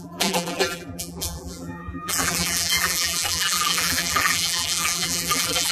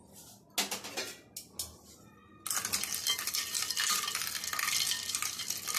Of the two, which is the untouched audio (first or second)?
second